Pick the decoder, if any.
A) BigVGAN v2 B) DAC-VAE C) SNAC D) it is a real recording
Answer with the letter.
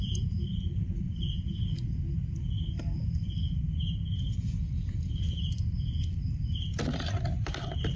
D